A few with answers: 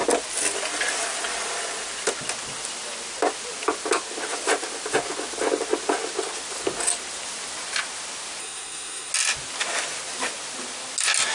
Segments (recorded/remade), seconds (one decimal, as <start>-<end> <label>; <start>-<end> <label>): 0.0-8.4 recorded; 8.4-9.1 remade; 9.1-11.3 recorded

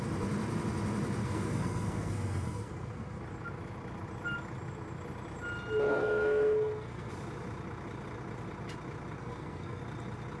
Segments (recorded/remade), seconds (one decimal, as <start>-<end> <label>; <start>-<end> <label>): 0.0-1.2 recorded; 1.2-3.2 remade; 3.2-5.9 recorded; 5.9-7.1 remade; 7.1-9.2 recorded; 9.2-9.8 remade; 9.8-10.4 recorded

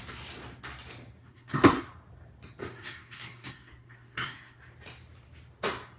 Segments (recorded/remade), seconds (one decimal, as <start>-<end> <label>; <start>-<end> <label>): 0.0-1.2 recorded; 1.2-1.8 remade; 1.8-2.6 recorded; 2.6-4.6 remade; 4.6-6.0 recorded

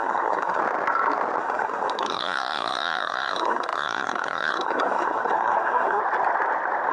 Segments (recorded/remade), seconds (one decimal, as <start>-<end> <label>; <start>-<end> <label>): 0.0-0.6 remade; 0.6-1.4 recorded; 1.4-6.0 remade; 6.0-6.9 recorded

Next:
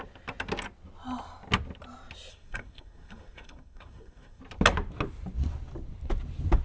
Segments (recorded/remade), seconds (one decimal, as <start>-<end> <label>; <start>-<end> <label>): 0.0-2.3 recorded; 2.3-4.4 remade; 4.4-6.6 recorded

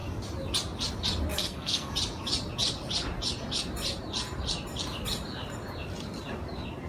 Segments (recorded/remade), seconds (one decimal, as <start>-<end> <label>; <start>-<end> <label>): 0.0-1.3 recorded; 1.3-1.9 remade; 1.9-6.9 recorded